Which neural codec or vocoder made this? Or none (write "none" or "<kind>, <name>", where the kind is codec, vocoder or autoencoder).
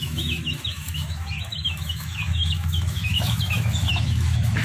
autoencoder, DAC-VAE